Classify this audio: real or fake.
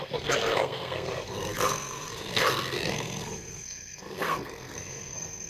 fake